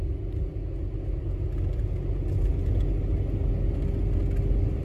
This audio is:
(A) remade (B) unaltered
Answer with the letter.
B